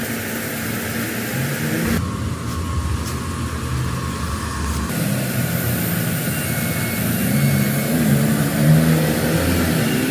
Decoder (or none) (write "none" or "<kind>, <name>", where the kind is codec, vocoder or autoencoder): none